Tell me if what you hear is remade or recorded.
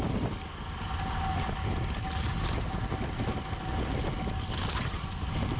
recorded